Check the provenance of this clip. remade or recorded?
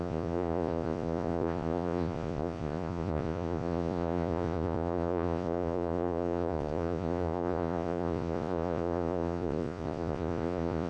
remade